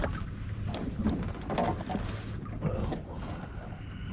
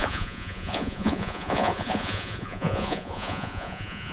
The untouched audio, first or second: first